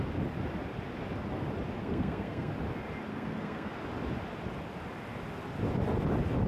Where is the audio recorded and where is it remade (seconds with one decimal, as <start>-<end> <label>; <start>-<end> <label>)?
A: 0.0-1.8 recorded; 1.8-2.5 remade; 2.5-3.1 recorded; 3.1-3.7 remade; 3.7-6.5 recorded